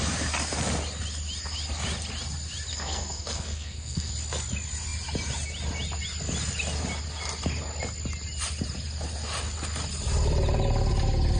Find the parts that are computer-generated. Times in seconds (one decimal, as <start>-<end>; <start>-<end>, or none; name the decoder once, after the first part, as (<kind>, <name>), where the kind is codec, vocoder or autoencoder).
2.7-4.1 (codec, SNAC)